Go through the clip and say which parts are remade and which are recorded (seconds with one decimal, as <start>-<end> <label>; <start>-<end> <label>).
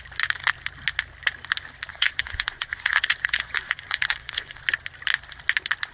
0.0-1.9 recorded; 1.9-4.6 remade; 4.6-5.9 recorded